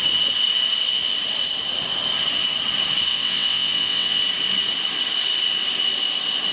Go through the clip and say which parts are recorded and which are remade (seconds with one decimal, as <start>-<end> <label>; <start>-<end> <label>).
0.0-3.1 recorded; 3.1-4.2 remade; 4.2-6.5 recorded